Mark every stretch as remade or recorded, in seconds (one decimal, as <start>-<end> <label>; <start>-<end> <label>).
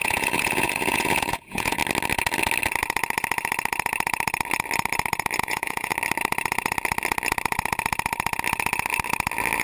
0.0-1.8 remade; 1.8-5.4 recorded; 5.4-5.9 remade; 5.9-9.6 recorded